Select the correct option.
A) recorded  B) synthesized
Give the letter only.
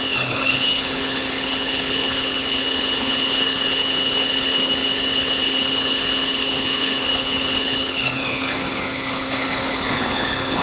B